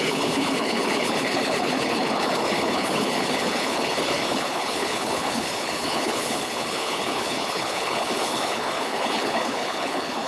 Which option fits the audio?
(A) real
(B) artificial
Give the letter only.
B